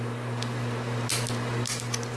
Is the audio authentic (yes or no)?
yes